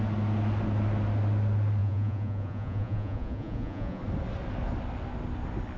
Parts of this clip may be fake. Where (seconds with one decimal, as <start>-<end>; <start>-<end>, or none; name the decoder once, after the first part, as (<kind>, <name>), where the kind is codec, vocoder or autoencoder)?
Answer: 1.8-4.0 (vocoder, Vocos)